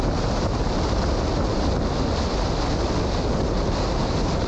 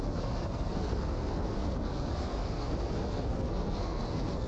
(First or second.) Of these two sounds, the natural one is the first